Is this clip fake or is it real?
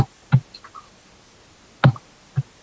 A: real